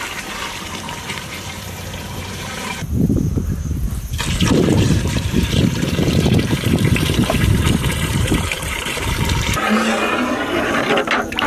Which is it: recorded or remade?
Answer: remade